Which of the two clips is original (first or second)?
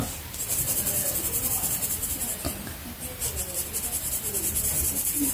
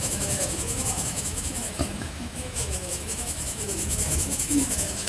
first